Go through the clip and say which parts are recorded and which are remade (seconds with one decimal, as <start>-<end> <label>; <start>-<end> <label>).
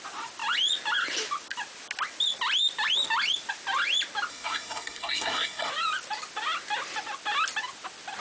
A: 0.0-4.3 recorded; 4.3-5.7 remade; 5.7-8.2 recorded